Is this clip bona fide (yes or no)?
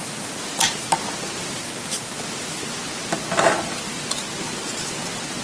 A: yes